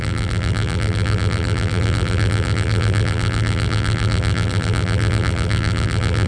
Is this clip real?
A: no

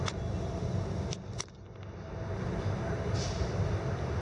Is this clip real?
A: yes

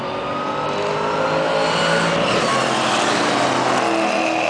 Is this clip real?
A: yes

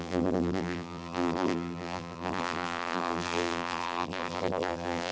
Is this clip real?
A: no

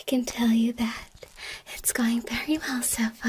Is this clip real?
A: yes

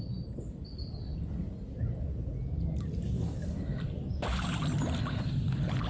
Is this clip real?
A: no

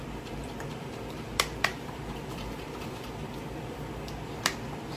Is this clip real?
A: no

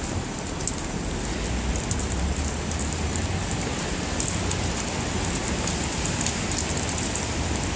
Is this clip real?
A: yes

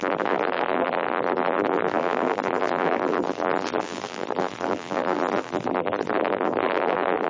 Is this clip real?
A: no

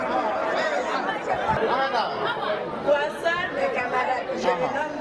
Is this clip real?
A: yes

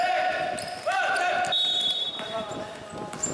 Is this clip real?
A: no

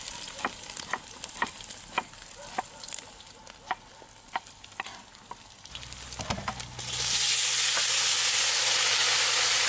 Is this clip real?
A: yes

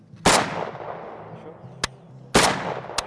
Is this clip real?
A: yes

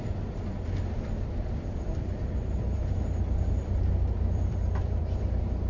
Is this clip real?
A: no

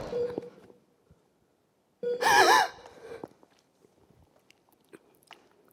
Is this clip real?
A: no